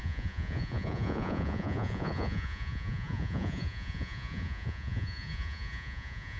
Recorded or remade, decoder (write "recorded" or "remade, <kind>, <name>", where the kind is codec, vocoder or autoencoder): remade, vocoder, Vocos